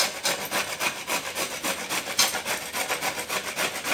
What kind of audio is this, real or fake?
real